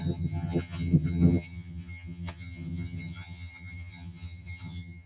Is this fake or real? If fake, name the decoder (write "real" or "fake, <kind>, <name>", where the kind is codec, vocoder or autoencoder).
fake, vocoder, HiFi-GAN